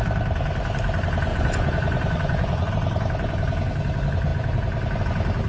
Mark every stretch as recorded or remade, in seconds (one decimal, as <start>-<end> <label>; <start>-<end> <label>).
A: 0.0-1.3 recorded; 1.3-2.7 remade; 2.7-5.5 recorded